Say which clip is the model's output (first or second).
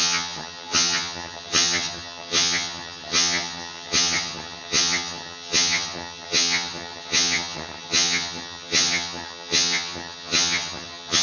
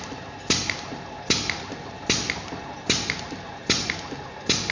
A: first